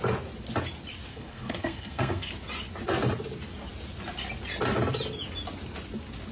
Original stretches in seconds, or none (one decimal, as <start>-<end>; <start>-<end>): 0.0-1.1; 2.3-6.3